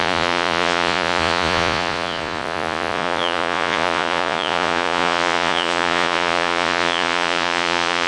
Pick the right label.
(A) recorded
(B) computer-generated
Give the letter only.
B